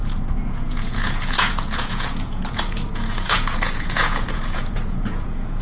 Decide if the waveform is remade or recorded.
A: remade